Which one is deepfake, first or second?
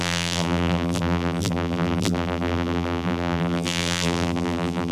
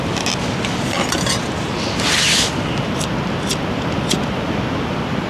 first